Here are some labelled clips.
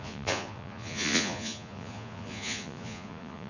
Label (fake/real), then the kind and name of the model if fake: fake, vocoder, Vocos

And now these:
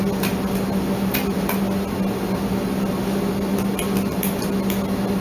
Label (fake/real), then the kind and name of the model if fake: real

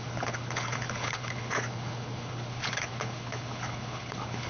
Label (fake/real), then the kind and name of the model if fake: fake, codec, HILCodec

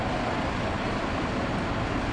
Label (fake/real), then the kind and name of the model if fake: real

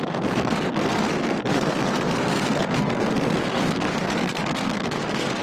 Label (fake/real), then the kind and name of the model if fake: fake, codec, SNAC